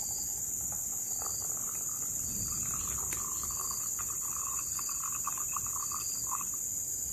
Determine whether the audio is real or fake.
real